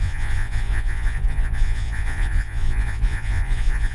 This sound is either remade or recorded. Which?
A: remade